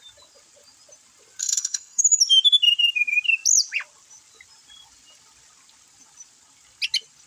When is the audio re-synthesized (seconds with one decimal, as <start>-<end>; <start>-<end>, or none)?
1.4-2.0